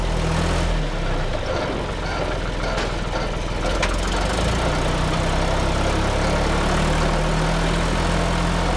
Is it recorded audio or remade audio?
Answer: recorded